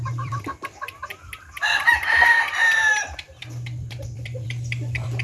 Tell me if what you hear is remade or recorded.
remade